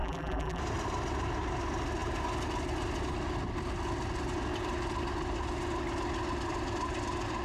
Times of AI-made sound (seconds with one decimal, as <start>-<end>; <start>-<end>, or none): 0.0-0.6